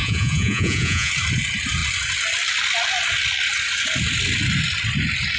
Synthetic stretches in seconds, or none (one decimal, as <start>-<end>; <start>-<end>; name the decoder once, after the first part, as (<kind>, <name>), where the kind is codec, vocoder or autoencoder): 0.0-1.1 (vocoder, Vocos)